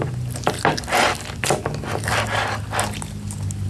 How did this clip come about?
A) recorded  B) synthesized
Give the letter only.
A